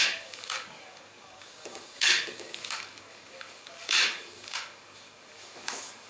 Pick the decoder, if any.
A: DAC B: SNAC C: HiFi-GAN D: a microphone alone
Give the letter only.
A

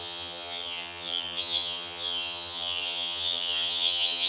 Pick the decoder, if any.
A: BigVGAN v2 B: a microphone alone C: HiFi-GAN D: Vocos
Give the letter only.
C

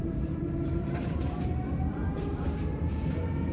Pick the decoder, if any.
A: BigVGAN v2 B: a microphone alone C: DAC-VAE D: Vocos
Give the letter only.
A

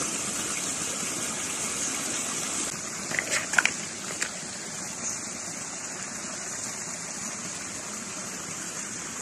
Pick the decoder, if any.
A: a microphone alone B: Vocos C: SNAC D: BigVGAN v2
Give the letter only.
A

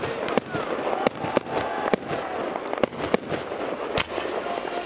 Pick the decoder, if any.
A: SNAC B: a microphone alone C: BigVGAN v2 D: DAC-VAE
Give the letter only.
B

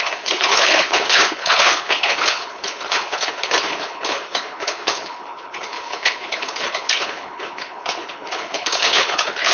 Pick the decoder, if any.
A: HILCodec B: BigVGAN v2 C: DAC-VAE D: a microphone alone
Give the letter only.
A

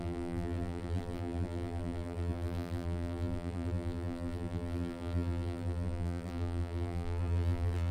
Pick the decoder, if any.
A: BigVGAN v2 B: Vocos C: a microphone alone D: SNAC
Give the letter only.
A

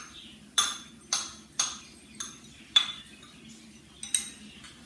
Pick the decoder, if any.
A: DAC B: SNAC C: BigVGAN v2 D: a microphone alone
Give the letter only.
D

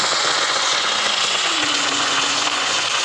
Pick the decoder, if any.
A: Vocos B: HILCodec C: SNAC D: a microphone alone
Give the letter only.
A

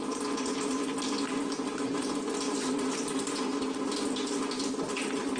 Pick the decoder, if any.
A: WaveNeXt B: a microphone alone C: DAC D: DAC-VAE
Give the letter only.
B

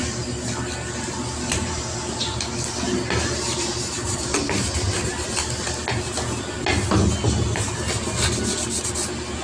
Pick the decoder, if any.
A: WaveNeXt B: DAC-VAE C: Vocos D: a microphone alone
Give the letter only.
D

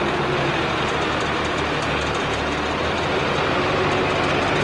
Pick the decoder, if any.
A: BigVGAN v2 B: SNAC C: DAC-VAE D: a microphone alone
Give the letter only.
D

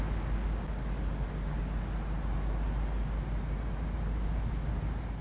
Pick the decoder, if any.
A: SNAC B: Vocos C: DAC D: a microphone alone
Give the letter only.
D